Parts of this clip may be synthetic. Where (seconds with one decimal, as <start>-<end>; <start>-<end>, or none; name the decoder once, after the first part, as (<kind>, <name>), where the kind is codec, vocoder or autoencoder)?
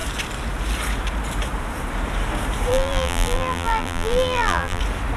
2.7-4.8 (vocoder, BigVGAN v2)